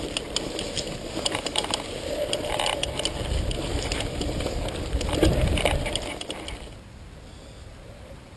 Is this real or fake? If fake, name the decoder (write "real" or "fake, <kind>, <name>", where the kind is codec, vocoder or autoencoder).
real